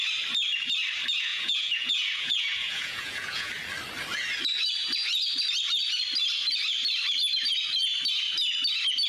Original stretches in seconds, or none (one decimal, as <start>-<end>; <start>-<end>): 0.0-1.3; 3.5-9.1